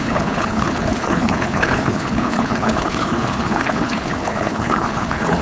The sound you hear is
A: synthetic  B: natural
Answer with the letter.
A